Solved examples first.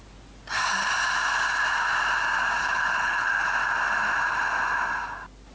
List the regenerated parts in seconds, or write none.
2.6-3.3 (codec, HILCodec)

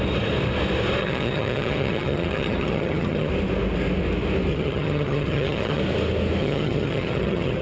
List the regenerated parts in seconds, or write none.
1.0-3.3 (vocoder, HiFi-GAN); 4.5-5.8; 6.4-7.6